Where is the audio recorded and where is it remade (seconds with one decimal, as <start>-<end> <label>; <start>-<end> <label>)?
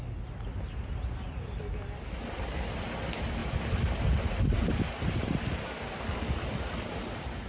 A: 0.0-7.5 recorded